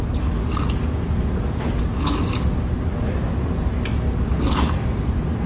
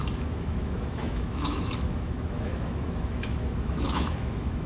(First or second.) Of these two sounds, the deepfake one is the second